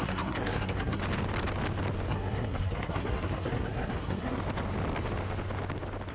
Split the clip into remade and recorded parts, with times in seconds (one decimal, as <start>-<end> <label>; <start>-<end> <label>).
0.0-1.0 remade; 1.0-2.1 recorded; 2.1-4.4 remade; 4.4-6.1 recorded